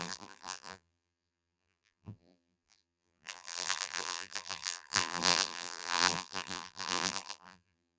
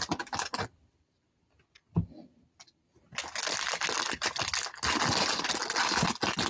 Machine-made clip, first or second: first